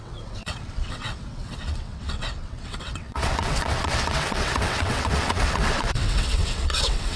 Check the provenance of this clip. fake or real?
fake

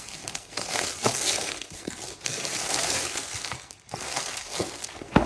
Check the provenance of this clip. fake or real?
fake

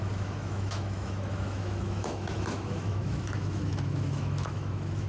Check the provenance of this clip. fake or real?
fake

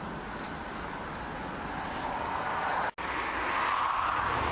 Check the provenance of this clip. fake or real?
real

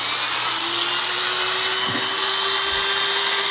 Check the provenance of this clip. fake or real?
real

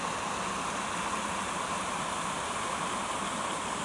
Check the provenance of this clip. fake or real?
real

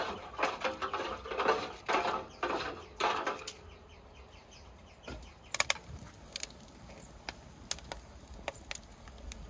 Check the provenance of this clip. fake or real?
real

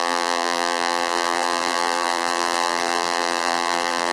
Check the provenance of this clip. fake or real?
fake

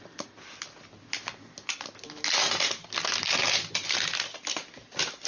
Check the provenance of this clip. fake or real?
real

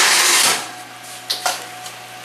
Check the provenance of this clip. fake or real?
real